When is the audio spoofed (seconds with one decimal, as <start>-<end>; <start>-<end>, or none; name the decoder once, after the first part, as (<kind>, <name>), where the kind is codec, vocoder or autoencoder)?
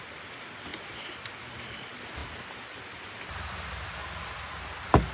4.0-4.6 (vocoder, Vocos)